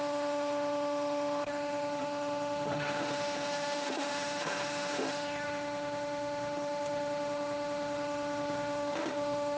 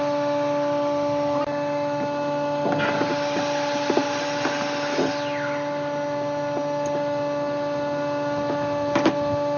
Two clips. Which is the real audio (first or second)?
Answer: second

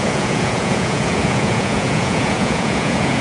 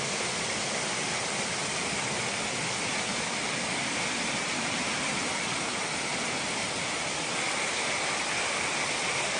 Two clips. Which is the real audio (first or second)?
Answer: second